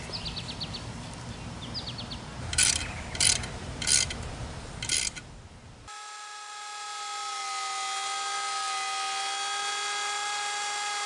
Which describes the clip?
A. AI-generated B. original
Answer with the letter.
B